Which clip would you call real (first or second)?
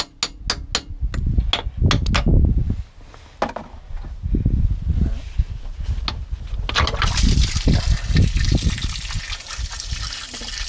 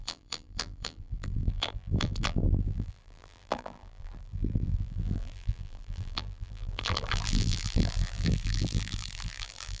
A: first